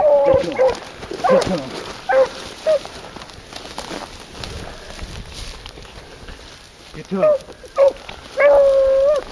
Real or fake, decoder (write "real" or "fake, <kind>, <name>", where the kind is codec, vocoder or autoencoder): real